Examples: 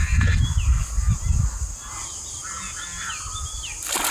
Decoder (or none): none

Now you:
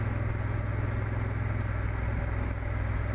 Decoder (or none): none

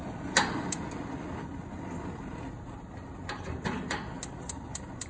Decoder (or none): none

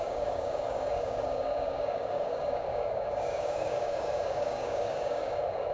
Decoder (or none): codec, DAC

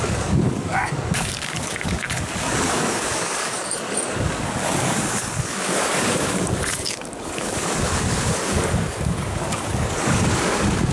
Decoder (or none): codec, DAC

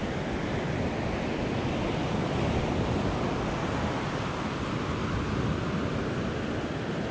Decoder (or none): none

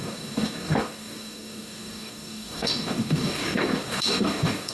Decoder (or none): codec, DAC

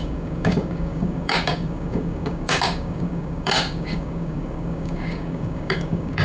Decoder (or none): codec, DAC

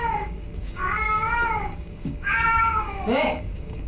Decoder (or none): codec, DAC